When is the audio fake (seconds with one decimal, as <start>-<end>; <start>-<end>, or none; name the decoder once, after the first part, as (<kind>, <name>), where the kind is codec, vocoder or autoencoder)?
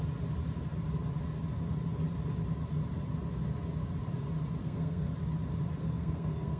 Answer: 4.6-5.1 (codec, SNAC); 5.8-6.6